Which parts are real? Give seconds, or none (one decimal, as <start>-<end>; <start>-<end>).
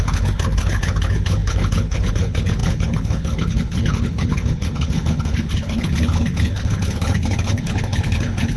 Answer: none